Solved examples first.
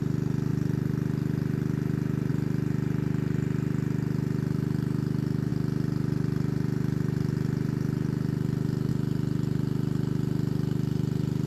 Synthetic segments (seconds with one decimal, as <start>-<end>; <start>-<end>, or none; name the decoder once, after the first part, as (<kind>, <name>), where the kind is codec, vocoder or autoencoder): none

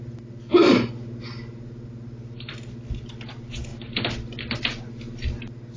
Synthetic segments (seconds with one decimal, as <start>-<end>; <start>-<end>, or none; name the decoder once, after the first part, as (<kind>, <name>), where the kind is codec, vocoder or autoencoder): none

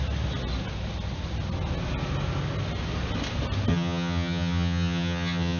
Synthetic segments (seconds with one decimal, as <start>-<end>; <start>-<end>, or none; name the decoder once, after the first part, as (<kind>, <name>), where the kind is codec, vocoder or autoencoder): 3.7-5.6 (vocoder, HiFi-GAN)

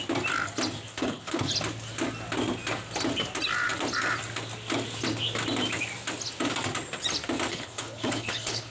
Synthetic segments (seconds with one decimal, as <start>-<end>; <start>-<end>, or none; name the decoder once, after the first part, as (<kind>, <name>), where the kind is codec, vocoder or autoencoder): 0.9-1.5 (codec, HILCodec); 7.5-8.7

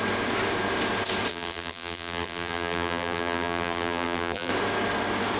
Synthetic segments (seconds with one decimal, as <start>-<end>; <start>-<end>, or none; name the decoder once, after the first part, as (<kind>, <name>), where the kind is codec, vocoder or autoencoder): 1.3-4.5 (vocoder, BigVGAN v2)

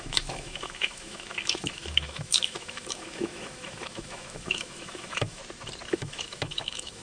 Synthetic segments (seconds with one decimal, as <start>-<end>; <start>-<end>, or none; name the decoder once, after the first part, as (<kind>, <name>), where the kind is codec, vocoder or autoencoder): 0.0-5.4 (autoencoder, DAC-VAE); 5.9-7.0

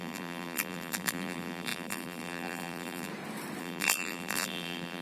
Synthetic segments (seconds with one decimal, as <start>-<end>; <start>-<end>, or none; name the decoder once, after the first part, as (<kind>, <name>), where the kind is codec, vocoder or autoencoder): 0.0-3.1 (vocoder, BigVGAN v2); 3.6-5.0